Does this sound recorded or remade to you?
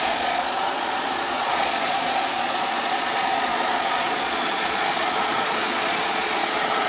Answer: remade